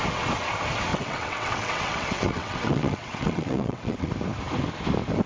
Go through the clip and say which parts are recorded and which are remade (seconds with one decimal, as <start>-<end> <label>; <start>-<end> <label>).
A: 0.0-0.9 recorded; 0.9-4.1 remade; 4.1-5.3 recorded